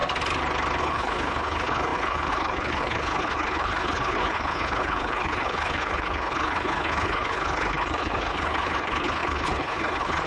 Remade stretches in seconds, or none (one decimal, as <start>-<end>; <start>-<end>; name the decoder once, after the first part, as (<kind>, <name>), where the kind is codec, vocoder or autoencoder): 0.8-10.3 (codec, HILCodec)